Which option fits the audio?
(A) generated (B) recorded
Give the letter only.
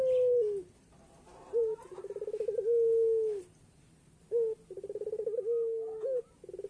B